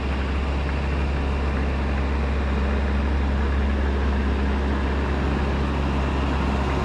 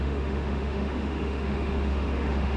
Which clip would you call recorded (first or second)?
first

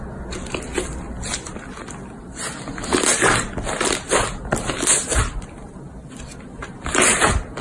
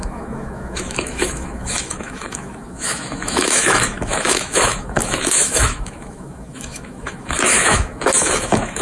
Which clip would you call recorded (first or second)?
first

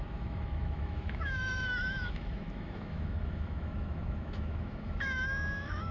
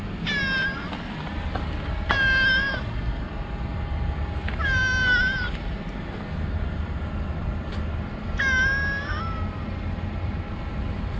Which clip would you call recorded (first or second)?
second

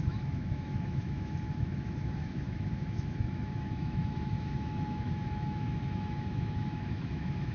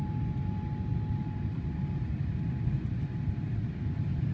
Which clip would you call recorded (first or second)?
second